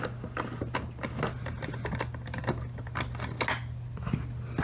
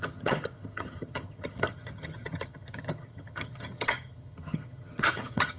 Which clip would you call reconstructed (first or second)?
second